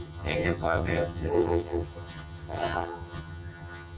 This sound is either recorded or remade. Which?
remade